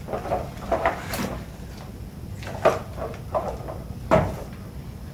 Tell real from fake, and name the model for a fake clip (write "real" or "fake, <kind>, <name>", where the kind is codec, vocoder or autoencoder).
real